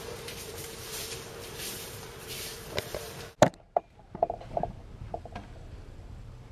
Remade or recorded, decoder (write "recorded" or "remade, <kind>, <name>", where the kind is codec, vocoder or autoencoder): remade, vocoder, BigVGAN v2